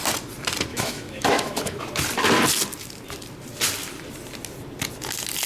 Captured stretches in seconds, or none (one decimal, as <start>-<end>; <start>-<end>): 0.0-0.7; 1.8-5.5